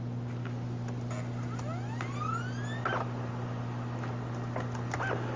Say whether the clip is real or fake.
real